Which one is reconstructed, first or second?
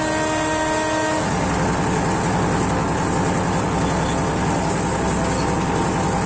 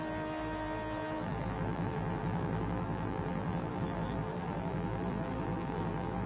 second